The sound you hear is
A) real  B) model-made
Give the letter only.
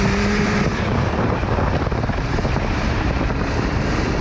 B